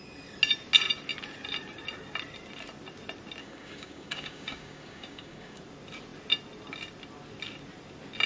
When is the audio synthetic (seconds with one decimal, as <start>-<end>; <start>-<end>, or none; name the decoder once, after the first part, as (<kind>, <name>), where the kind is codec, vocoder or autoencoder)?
3.4-5.6 (codec, DAC)